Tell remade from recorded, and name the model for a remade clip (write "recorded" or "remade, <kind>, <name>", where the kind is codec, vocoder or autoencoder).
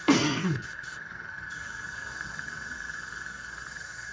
remade, codec, SNAC